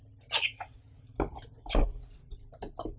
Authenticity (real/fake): real